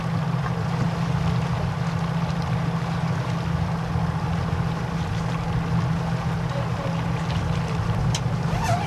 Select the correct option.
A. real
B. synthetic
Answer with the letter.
A